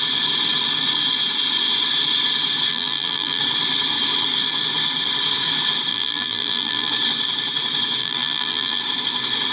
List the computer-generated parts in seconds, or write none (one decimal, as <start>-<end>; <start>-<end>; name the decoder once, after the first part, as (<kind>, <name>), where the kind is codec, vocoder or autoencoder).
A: 2.7-3.4 (vocoder, BigVGAN v2); 5.9-6.9; 8.0-8.8